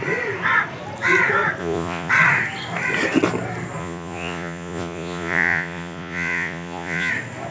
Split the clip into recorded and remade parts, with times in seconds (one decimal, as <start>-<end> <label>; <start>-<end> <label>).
0.0-1.6 recorded; 1.6-2.1 remade; 2.1-3.8 recorded; 3.8-7.1 remade; 7.1-7.5 recorded